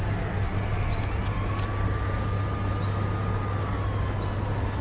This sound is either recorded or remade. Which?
recorded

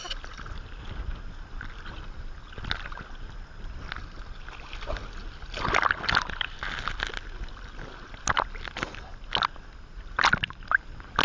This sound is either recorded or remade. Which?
recorded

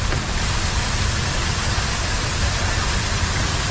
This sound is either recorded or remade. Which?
recorded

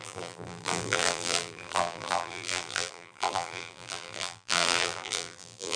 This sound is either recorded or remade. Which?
remade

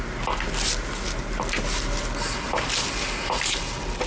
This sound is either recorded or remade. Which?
recorded